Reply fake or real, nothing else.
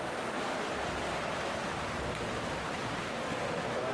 real